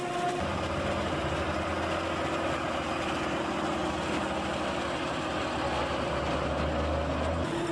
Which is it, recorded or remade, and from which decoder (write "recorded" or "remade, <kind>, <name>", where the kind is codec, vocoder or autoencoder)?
recorded